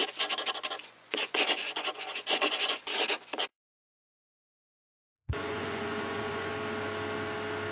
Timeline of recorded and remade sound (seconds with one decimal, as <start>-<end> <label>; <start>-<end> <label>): 0.0-2.8 remade; 2.8-3.5 recorded; 3.5-6.5 remade; 6.5-7.7 recorded